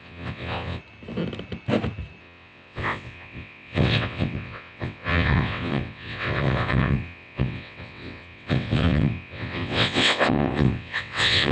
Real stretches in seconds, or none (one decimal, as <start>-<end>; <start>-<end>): 0.8-2.2